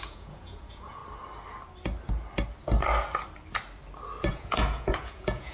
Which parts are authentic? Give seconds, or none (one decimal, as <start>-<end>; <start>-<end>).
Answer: 1.0-4.3